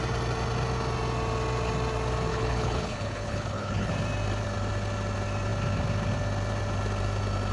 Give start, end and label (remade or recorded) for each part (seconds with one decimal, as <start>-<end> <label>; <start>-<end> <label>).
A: 0.0-2.3 recorded; 2.3-3.9 remade; 3.9-7.5 recorded